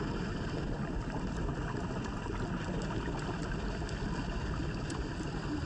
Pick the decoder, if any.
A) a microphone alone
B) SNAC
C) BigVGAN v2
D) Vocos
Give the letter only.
A